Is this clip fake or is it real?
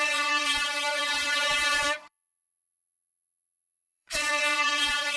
fake